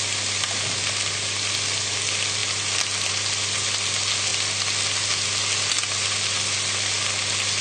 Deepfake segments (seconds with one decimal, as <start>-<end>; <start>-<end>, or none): none